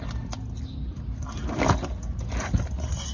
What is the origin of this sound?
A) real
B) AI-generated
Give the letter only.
A